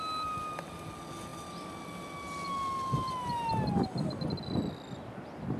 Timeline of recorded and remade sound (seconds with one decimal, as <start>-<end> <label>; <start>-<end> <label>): 0.0-5.6 recorded